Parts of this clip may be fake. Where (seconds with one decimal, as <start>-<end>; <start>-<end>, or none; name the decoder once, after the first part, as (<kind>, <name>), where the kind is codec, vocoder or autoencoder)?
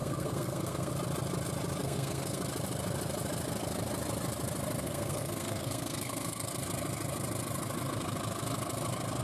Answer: 0.0-0.9 (codec, SNAC); 1.8-2.4; 4.8-6.5